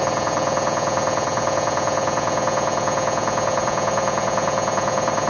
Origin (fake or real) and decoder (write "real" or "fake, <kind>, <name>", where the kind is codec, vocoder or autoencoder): fake, vocoder, Vocos